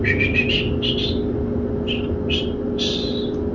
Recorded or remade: recorded